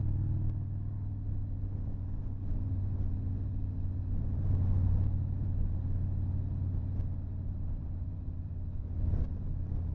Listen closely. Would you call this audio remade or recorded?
recorded